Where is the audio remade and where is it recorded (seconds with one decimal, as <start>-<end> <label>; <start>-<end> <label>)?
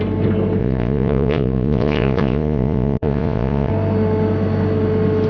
0.0-0.6 recorded; 0.6-3.7 remade; 3.7-5.3 recorded